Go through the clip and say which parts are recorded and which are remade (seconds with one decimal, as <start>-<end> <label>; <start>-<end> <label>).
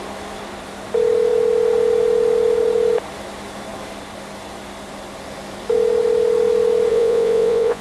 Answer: 0.0-6.9 recorded; 6.9-7.8 remade